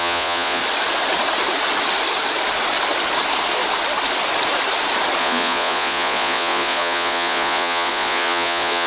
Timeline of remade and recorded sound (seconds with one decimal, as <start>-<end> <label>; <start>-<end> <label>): 0.0-0.6 remade; 0.6-5.2 recorded; 5.2-8.9 remade